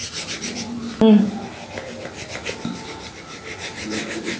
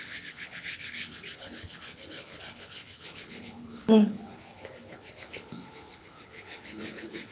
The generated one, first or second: second